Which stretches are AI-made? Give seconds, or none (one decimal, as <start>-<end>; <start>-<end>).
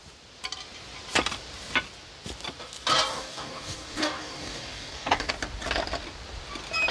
3.1-5.3